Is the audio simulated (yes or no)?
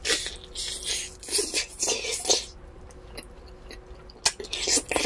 no